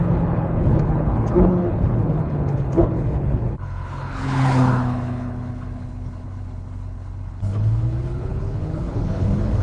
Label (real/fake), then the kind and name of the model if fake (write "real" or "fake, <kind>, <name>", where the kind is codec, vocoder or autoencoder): fake, codec, HILCodec